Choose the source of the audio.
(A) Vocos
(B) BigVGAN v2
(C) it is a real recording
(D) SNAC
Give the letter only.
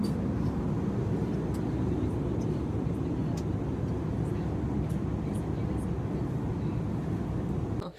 C